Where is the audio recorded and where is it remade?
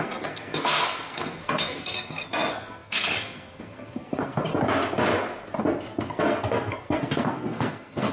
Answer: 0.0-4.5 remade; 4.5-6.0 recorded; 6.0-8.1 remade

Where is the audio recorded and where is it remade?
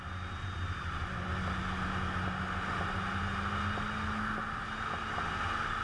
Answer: 0.0-5.8 recorded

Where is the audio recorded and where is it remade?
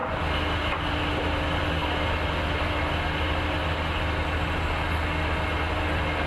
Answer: 0.0-6.3 recorded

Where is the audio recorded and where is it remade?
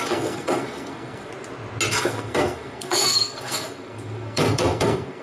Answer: 0.0-1.3 remade; 1.3-1.9 recorded; 1.9-5.2 remade